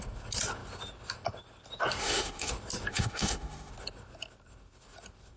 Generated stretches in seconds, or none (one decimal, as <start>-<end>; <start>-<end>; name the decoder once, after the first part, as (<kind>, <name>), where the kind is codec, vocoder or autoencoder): 2.0-2.5 (autoencoder, DAC-VAE); 2.9-3.7

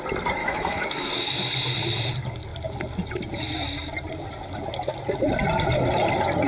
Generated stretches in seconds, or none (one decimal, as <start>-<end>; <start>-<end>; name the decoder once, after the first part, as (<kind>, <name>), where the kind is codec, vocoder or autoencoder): 0.4-1.1 (autoencoder, DAC-VAE)

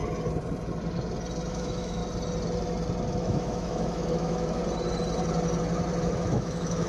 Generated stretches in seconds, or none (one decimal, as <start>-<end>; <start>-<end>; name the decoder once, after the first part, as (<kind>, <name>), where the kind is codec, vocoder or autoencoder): 1.5-2.0 (autoencoder, DAC-VAE); 3.2-4.6; 6.0-6.9

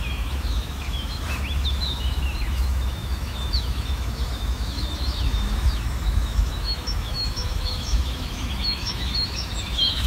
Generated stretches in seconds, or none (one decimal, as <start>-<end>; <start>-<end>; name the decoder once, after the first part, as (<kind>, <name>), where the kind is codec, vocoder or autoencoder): 0.0-10.1 (autoencoder, DAC-VAE)

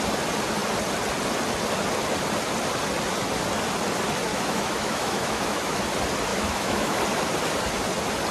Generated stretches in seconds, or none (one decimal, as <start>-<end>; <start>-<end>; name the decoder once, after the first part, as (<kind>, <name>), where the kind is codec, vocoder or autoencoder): 4.3-5.8 (autoencoder, DAC-VAE); 6.3-7.0

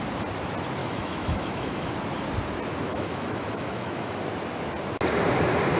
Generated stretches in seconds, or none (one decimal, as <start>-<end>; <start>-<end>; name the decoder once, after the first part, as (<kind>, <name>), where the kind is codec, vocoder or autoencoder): 0.8-1.9 (autoencoder, DAC-VAE); 2.9-4.2

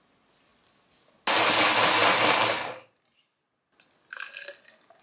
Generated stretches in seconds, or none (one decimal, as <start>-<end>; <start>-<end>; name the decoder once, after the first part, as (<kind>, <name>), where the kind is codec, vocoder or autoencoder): none

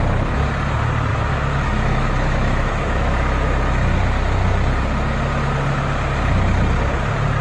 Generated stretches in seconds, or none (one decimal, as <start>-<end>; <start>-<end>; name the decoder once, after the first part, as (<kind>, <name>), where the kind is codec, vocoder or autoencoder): 1.1-3.9 (autoencoder, DAC-VAE)